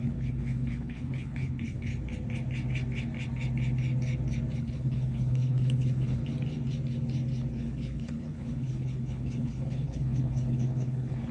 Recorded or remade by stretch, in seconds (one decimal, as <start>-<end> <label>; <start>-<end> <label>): 0.0-1.9 remade; 1.9-4.6 recorded; 4.6-6.2 remade; 6.2-7.5 recorded; 7.5-11.3 remade